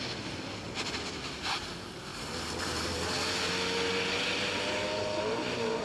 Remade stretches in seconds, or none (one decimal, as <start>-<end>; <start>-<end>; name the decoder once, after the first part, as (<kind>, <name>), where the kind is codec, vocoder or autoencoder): none